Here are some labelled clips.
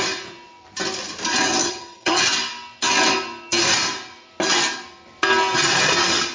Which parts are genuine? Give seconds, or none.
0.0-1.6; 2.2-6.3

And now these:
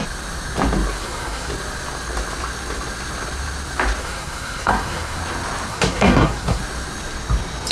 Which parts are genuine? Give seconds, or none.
0.0-1.0; 1.5-4.0; 5.2-5.7; 6.6-7.7

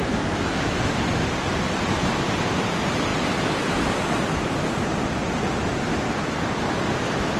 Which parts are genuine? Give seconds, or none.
0.8-7.4

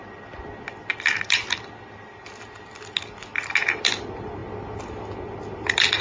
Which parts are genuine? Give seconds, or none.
0.0-6.0

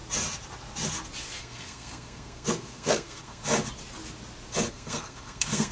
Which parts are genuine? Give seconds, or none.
0.0-1.4; 3.4-4.7

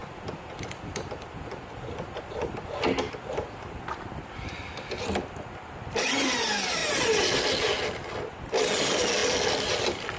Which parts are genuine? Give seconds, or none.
2.5-10.2

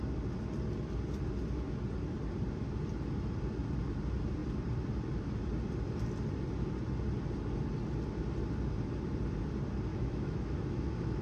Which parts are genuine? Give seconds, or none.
0.0-9.9